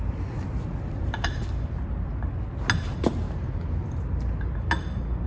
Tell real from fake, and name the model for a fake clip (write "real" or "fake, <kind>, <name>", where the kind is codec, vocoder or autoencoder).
real